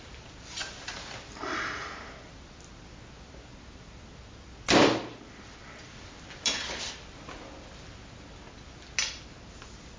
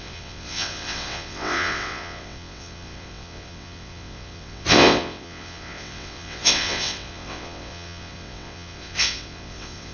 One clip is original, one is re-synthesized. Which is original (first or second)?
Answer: first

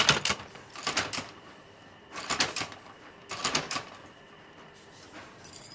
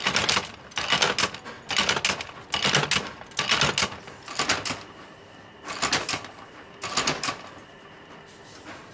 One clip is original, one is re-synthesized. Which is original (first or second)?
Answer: second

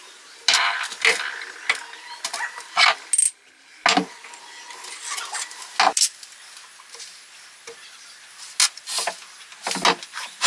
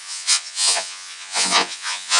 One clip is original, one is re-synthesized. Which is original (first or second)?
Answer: first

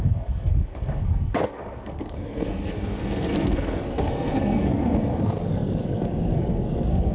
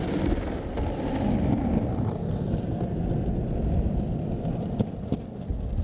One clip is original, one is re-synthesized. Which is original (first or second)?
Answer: second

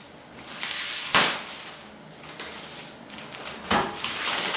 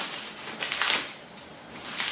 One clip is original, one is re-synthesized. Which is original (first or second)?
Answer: first